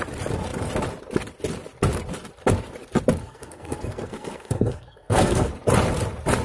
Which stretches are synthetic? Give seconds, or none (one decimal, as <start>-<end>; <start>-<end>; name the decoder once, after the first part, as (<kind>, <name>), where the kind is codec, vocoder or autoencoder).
3.2-5.5 (codec, SNAC)